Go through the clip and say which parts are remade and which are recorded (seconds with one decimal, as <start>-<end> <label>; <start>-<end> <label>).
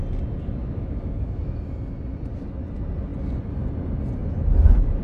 0.0-0.6 recorded; 0.6-1.6 remade; 1.6-5.0 recorded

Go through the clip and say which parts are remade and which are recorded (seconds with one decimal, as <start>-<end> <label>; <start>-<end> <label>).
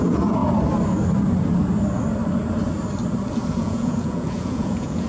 0.0-0.4 remade; 0.4-3.5 recorded; 3.5-5.1 remade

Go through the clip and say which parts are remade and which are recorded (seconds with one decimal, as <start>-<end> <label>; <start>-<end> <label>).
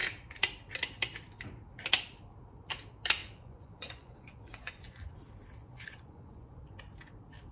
0.0-3.2 recorded; 3.2-5.1 remade; 5.1-5.6 recorded; 5.6-6.8 remade; 6.8-7.5 recorded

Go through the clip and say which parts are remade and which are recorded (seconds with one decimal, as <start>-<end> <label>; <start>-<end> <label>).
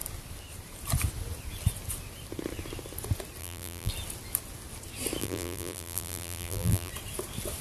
0.0-3.4 recorded; 3.4-3.9 remade; 3.9-5.2 recorded; 5.2-6.9 remade; 6.9-7.6 recorded